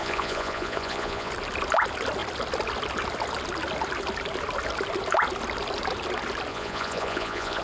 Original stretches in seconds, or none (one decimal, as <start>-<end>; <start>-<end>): 1.3-6.5